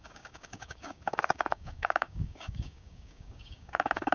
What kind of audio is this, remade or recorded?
remade